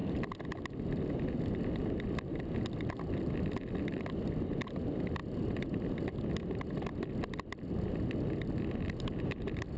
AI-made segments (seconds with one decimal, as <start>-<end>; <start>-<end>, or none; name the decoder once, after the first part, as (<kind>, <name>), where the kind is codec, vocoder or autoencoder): none

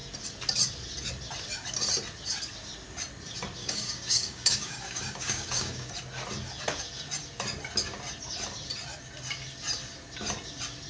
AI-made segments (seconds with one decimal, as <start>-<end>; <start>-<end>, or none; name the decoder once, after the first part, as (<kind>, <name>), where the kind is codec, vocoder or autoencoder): 3.6-5.9 (codec, DAC)